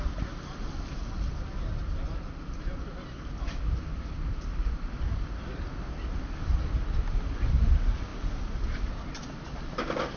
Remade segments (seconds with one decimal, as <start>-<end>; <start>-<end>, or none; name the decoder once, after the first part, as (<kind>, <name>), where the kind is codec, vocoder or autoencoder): none